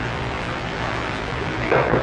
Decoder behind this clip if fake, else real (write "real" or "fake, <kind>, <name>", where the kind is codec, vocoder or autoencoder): fake, vocoder, BigVGAN v2